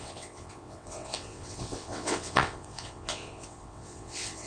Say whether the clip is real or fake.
fake